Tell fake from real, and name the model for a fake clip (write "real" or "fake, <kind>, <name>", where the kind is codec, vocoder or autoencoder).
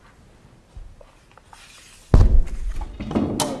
real